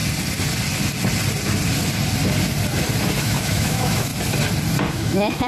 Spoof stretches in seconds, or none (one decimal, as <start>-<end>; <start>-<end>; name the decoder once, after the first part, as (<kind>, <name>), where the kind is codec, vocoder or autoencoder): 3.2-4.1 (autoencoder, DAC-VAE); 4.9-5.5